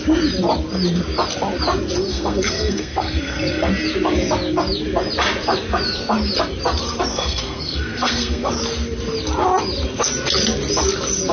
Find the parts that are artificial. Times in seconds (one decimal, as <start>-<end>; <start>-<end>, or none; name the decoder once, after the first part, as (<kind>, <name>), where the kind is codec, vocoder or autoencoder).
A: 2.1-3.7 (codec, SNAC); 7.1-8.5